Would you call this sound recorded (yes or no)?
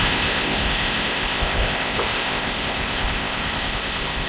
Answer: no